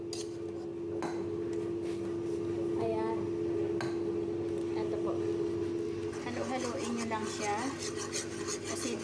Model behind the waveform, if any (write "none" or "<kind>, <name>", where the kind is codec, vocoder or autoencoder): none